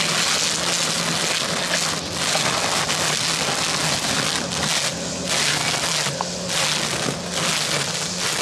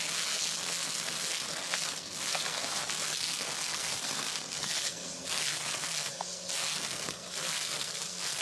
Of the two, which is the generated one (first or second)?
second